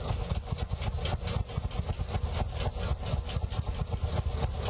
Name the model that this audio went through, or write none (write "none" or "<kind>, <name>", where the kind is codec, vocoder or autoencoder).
none